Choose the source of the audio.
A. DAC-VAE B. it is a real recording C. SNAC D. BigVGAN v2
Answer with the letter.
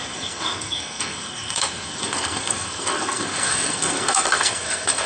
C